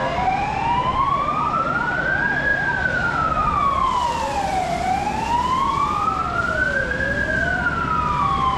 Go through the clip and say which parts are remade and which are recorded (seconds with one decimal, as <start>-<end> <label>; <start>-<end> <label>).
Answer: 0.0-2.5 recorded; 2.5-3.1 remade; 3.1-8.6 recorded